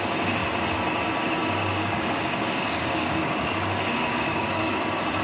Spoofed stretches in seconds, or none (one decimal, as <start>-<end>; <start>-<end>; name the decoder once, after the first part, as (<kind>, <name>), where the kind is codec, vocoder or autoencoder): 1.6-4.7 (codec, DAC)